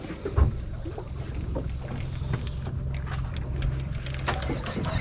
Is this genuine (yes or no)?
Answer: yes